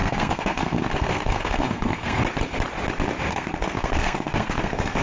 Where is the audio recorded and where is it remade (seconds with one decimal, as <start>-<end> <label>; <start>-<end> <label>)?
0.0-2.2 remade; 2.2-3.3 recorded; 3.3-5.0 remade